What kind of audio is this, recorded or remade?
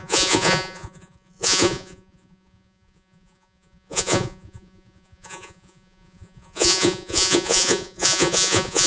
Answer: remade